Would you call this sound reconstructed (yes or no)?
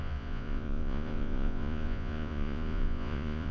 yes